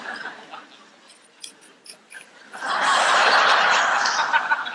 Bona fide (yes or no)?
yes